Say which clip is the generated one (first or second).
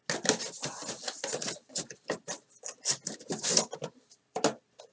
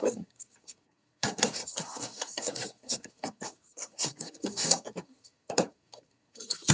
second